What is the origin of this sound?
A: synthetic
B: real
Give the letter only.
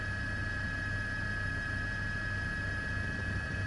B